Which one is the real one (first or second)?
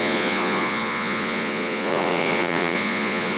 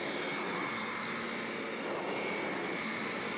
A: second